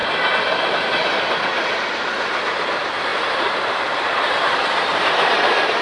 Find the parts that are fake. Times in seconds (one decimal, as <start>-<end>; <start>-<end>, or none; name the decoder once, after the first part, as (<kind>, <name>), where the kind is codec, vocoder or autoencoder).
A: 1.5-2.7 (vocoder, BigVGAN v2); 3.1-5.8

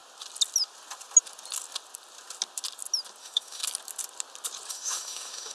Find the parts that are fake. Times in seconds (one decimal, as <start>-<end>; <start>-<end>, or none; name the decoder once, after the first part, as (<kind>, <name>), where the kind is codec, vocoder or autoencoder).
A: 3.2-3.6 (autoencoder, DAC-VAE); 4.7-5.5